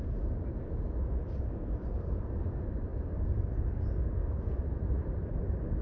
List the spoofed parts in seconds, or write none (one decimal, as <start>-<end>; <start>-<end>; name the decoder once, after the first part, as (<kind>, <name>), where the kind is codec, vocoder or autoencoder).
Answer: none

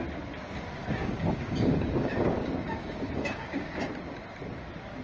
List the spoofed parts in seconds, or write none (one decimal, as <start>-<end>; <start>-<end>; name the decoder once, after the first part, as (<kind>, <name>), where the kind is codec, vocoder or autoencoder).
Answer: 0.8-3.8 (codec, DAC)